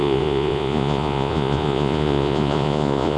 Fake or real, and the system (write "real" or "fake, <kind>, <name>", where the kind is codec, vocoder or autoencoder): fake, vocoder, Vocos